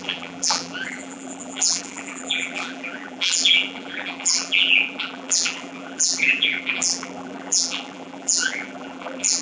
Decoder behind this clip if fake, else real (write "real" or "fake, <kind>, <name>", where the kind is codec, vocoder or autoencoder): fake, vocoder, BigVGAN v2